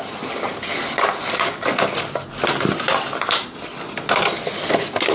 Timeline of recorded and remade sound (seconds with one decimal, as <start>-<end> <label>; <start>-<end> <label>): 0.0-5.1 recorded